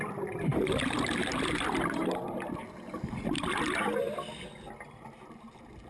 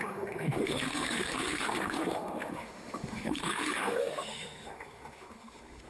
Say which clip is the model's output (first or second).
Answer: second